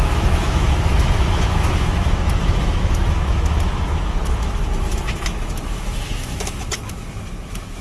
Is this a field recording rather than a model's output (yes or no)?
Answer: no